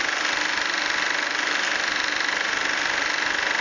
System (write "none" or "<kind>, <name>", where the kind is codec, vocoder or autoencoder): none